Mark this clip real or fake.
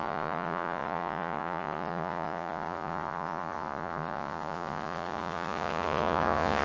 fake